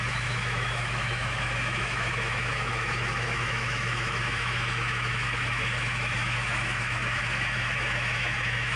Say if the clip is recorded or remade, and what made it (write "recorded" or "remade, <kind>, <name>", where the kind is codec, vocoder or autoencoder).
remade, autoencoder, DAC-VAE